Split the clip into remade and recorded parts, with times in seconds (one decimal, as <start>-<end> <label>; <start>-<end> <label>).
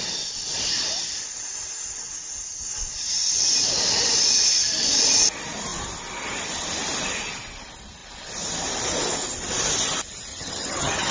0.0-10.3 recorded; 10.3-11.1 remade